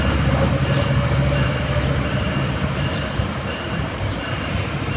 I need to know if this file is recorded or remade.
recorded